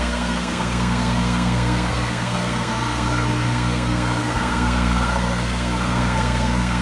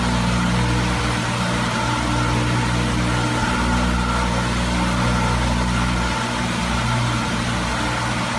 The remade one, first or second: first